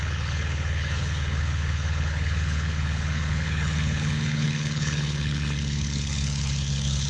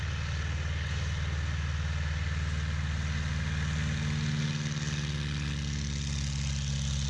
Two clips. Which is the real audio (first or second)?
second